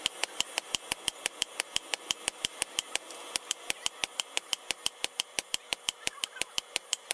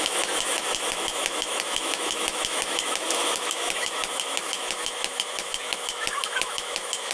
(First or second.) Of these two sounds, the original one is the first